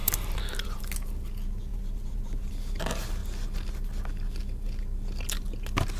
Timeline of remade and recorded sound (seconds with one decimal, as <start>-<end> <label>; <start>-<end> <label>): 0.0-0.8 remade; 0.8-1.7 recorded; 1.7-2.5 remade; 2.5-6.0 recorded

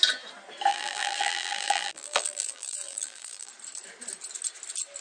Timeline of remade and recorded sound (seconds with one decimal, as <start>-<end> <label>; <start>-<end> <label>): 0.0-0.7 recorded; 0.7-3.5 remade; 3.5-5.0 recorded

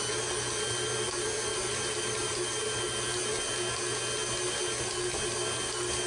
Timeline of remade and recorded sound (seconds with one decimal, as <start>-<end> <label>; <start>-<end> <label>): 0.0-1.5 recorded; 1.5-2.4 remade; 2.4-6.1 recorded

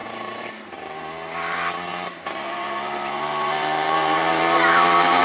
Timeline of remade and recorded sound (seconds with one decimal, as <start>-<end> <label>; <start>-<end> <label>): 0.0-1.0 remade; 1.0-1.9 recorded; 1.9-5.2 remade

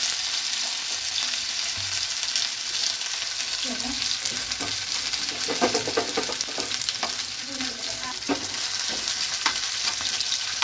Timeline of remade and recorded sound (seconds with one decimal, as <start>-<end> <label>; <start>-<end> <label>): 0.0-9.8 recorded; 9.8-10.6 remade

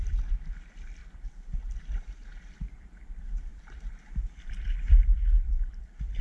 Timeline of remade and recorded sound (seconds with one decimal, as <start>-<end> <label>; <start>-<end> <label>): 0.0-1.0 remade; 1.0-1.8 recorded; 1.8-6.2 remade

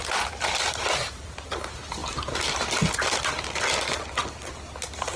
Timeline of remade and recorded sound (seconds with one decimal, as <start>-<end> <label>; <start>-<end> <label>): 0.0-5.2 recorded

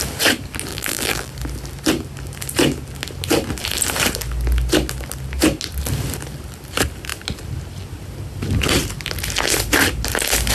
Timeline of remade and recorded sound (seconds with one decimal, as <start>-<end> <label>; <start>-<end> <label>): 0.0-0.7 recorded; 0.7-1.3 remade; 1.3-10.5 recorded